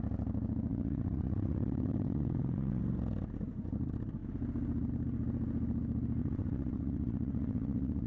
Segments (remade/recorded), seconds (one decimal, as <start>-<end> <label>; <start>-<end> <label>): 0.0-0.7 recorded; 0.7-2.8 remade; 2.8-6.2 recorded; 6.2-8.1 remade